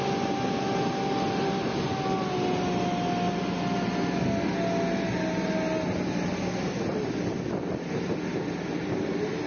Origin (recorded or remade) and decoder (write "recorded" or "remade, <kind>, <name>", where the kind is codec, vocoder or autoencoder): recorded